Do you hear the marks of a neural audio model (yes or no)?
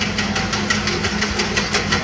no